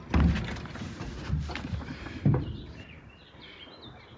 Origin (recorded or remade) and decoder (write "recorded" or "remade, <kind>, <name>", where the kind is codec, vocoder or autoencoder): recorded